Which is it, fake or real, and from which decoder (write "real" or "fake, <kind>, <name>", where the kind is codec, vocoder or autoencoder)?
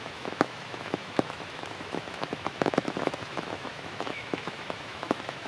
fake, autoencoder, DAC-VAE